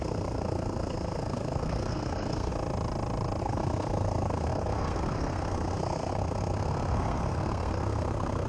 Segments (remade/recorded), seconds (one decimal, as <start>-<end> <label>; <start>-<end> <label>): 0.0-2.5 remade; 2.5-3.4 recorded; 3.4-8.5 remade